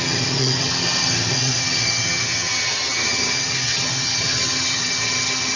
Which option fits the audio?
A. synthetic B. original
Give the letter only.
A